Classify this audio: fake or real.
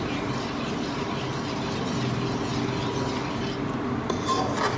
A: real